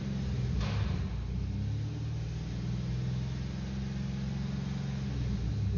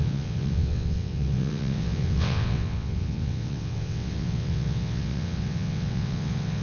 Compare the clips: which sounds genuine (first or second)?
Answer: first